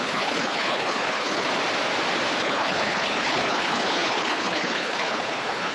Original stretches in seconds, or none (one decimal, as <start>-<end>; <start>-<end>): 1.5-2.4